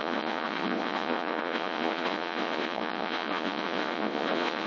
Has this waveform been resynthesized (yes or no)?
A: yes